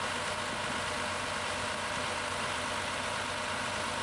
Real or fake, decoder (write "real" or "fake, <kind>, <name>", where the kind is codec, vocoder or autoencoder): real